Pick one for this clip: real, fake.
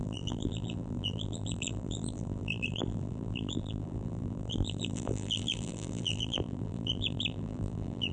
fake